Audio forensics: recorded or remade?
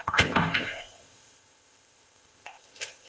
remade